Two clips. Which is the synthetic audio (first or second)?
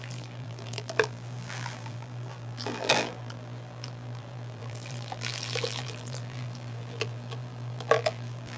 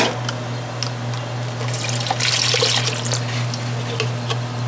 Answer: first